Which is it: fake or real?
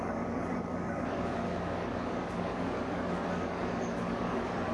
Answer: fake